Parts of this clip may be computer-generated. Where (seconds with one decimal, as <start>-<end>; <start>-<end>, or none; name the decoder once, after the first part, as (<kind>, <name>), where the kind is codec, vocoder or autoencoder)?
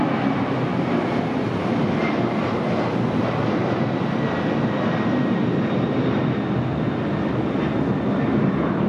1.6-2.5 (vocoder, BigVGAN v2)